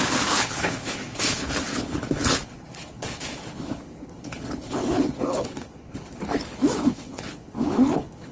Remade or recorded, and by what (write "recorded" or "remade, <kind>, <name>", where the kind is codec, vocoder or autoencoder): remade, codec, HILCodec